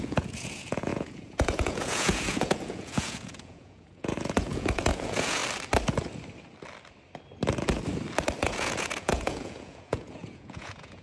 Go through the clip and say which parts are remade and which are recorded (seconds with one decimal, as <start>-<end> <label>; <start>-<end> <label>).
0.0-5.4 remade; 5.4-8.4 recorded; 8.4-11.0 remade